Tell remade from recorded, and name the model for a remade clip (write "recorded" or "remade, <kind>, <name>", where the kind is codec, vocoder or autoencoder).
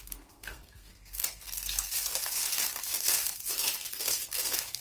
remade, codec, SNAC